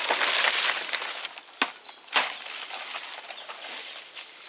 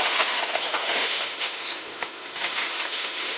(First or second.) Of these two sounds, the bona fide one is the first